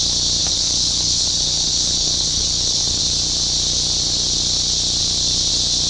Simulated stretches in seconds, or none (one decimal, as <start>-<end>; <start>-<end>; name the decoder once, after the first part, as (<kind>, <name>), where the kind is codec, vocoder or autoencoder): 0.4-3.0 (codec, HILCodec)